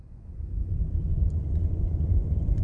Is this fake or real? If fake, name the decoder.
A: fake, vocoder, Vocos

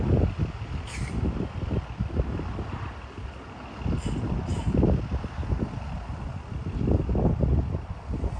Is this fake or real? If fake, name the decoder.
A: real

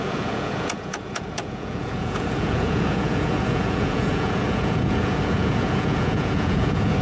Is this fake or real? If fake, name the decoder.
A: fake, vocoder, Vocos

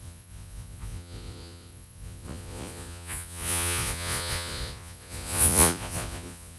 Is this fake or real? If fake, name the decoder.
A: fake, vocoder, Vocos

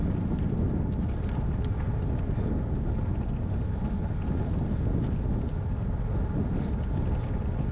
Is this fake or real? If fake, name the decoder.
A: real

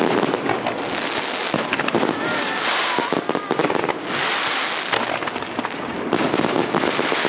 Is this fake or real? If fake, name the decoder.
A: real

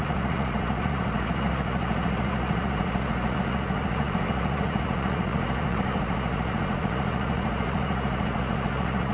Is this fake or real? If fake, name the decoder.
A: fake, vocoder, Vocos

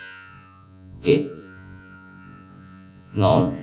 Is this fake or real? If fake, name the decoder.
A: fake, vocoder, Vocos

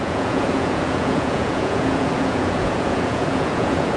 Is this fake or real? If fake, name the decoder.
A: fake, vocoder, Vocos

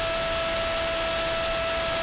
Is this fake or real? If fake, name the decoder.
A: real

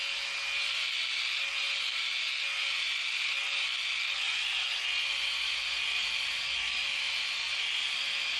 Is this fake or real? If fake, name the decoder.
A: real